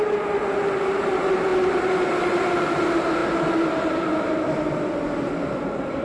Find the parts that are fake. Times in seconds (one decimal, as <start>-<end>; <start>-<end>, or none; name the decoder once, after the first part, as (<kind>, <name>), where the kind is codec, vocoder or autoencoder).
none